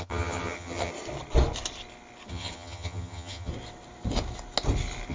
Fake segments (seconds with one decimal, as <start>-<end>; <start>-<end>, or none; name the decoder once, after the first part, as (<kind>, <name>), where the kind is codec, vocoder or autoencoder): 0.0-0.9 (vocoder, HiFi-GAN); 2.3-3.5